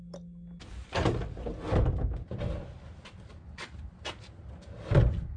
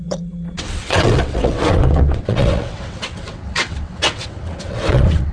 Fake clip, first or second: second